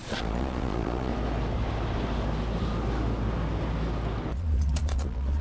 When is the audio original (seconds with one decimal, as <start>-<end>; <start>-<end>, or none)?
1.1-4.3